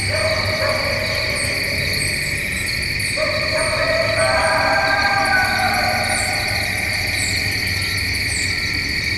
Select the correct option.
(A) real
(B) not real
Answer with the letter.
A